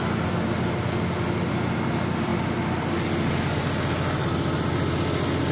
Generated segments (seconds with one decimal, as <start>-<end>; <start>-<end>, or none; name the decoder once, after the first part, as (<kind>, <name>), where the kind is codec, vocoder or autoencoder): none